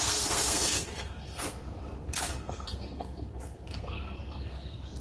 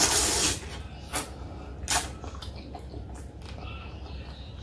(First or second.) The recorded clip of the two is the second